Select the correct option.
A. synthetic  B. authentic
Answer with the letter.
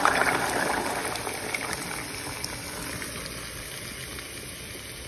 B